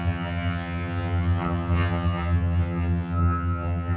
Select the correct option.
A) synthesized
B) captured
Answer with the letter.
A